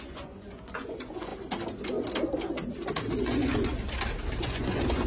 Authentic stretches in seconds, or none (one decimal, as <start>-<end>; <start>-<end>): 1.3-3.2; 3.7-4.4

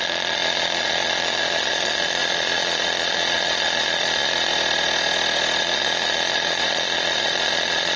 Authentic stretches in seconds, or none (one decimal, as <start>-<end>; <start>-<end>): 4.5-5.6

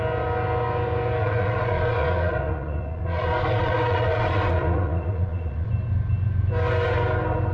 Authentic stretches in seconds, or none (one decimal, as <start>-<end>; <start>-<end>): 0.0-1.2; 5.7-7.5